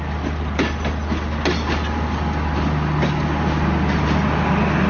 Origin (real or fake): real